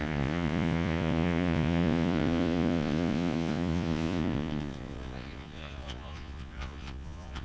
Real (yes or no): no